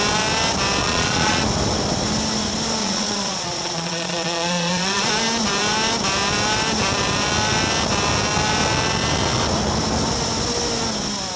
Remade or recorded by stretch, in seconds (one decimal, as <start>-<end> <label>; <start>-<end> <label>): 0.0-0.8 recorded; 0.8-1.4 remade; 1.4-2.8 recorded; 2.8-5.1 remade; 5.1-11.4 recorded